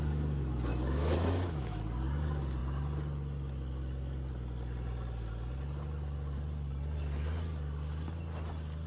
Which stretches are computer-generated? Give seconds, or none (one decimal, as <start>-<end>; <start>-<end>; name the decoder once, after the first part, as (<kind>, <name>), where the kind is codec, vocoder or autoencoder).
0.7-1.8 (autoencoder, DAC-VAE)